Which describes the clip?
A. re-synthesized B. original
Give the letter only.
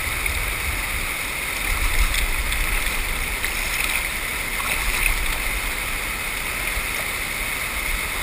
B